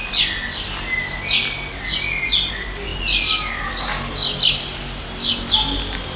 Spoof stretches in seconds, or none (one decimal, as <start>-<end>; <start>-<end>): none